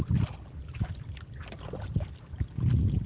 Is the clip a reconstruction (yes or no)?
no